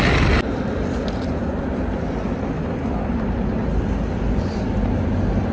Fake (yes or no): yes